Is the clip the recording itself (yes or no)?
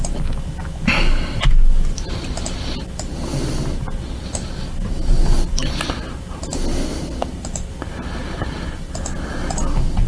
yes